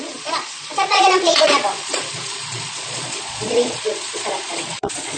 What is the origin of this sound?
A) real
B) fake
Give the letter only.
B